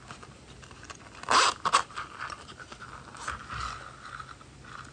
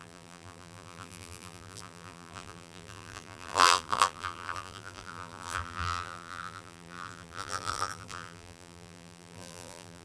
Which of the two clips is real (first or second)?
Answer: first